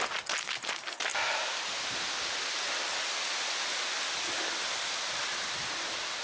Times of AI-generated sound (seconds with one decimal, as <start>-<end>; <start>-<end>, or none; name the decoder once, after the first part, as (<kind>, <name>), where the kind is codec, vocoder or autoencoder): none